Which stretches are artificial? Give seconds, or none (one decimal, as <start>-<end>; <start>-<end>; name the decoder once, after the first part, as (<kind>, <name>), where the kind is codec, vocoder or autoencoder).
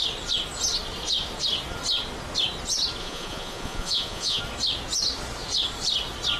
3.0-4.4 (vocoder, Vocos)